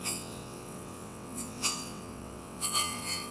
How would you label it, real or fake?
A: fake